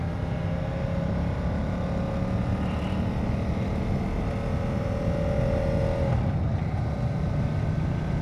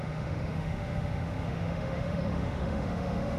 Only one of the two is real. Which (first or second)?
first